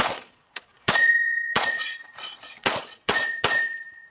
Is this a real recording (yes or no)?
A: no